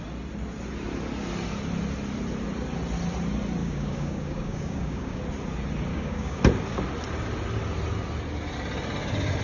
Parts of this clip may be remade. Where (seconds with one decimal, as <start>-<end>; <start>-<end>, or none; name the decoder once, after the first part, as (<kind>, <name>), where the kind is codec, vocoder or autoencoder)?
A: 3.6-5.2 (codec, DAC); 5.9-6.4